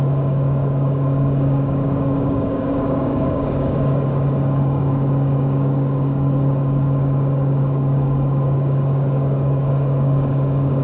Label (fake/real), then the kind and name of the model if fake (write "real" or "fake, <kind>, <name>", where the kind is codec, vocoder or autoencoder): fake, codec, DAC